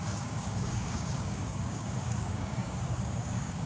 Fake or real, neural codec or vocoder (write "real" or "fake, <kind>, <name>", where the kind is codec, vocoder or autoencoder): fake, codec, DAC